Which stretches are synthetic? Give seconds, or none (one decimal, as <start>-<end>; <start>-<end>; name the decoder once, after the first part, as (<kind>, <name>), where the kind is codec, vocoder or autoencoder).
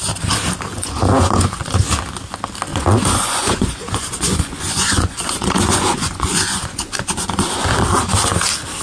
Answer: 0.7-1.8 (vocoder, Vocos); 2.7-7.7